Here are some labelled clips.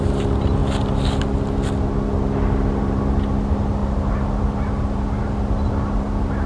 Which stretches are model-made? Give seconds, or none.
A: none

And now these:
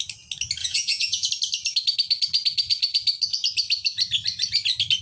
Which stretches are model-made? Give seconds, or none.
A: 0.6-1.3 (vocoder, Vocos)

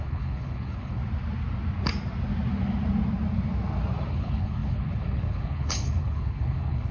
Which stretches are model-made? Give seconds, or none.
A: 0.0-1.0 (codec, HILCodec); 4.1-6.9

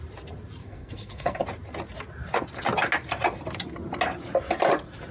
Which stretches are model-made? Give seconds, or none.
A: 0.6-1.4 (codec, SNAC)

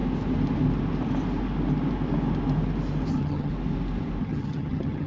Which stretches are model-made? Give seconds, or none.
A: 3.1-3.5 (vocoder, HiFi-GAN); 4.2-5.1